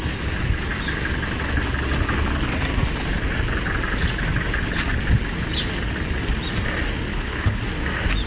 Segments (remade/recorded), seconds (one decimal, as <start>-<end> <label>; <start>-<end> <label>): 0.0-7.1 recorded; 7.1-7.6 remade; 7.6-8.3 recorded